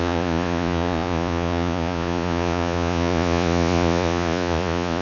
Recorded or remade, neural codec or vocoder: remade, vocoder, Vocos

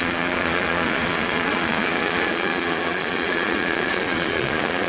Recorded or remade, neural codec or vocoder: remade, vocoder, Vocos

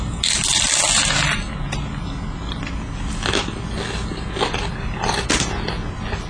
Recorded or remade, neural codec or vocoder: recorded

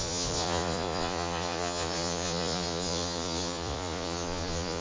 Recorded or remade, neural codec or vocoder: remade, vocoder, Vocos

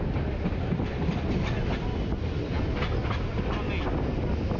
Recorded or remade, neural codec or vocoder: recorded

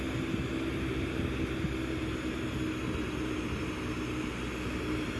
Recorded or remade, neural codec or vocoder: recorded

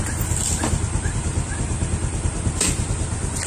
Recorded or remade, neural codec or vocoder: recorded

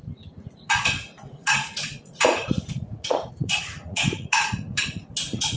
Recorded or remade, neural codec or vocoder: remade, vocoder, Vocos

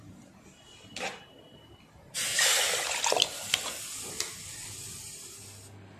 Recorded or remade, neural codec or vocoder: recorded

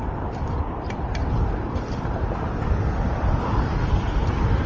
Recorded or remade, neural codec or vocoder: recorded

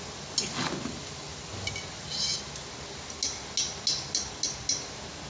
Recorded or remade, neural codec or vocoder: recorded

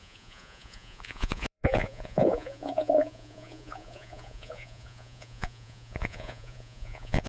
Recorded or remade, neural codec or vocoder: remade, vocoder, Vocos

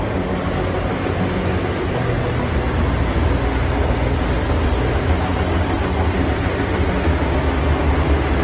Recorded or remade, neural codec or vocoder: recorded